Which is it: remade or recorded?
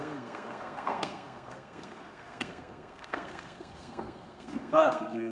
remade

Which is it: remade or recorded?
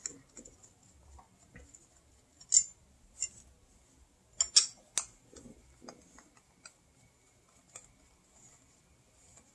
recorded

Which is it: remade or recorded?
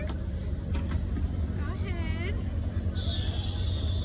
recorded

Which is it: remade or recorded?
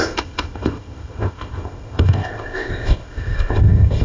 remade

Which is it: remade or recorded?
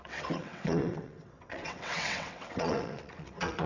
remade